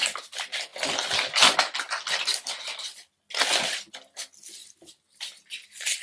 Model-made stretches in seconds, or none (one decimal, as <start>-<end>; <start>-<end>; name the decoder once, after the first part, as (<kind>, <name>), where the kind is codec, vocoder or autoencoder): 4.6-5.4 (vocoder, BigVGAN v2)